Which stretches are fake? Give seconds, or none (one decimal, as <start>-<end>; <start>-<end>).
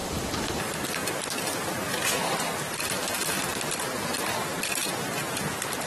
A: 0.0-3.5